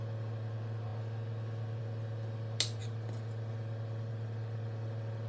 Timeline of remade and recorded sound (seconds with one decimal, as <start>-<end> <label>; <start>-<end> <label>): 0.0-5.3 recorded